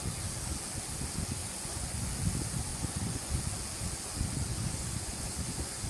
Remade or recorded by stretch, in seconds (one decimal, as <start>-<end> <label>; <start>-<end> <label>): 0.0-1.4 recorded; 1.4-2.1 remade; 2.1-2.7 recorded; 2.7-3.4 remade; 3.4-4.5 recorded; 4.5-5.9 remade